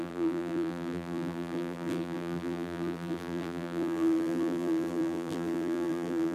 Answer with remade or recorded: remade